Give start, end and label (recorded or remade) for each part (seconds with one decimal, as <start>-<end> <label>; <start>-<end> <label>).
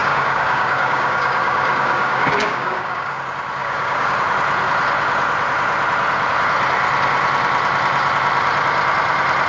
0.0-3.2 remade; 3.2-3.6 recorded; 3.6-4.1 remade; 4.1-9.5 recorded